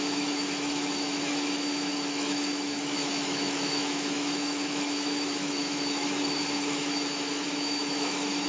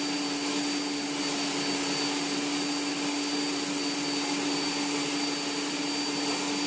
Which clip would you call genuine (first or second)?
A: second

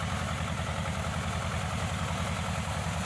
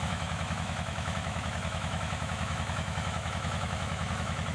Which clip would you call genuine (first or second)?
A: first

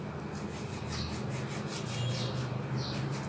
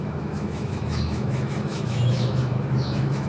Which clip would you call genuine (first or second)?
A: first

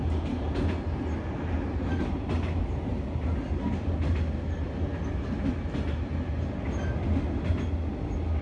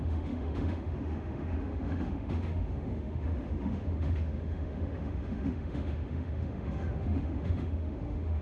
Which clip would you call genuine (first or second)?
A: first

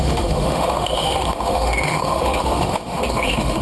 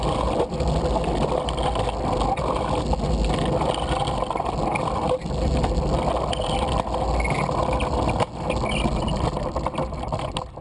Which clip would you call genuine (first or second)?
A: second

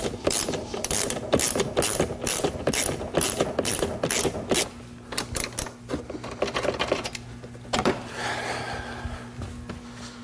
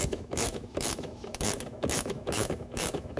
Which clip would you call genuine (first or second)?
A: first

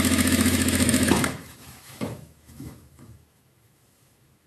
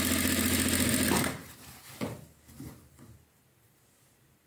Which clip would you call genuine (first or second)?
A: second